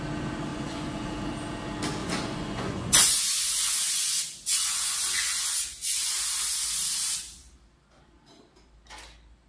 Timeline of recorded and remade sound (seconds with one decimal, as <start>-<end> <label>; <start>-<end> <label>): 0.0-0.5 recorded; 0.5-1.1 remade; 1.1-2.0 recorded; 2.0-6.2 remade; 6.2-9.5 recorded